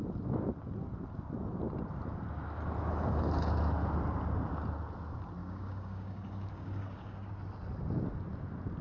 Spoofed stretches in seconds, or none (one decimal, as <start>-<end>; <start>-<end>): 5.4-7.3